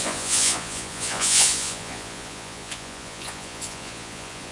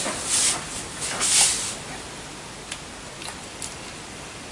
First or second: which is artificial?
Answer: first